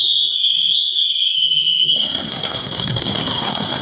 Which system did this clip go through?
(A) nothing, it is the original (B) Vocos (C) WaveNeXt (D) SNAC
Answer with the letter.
D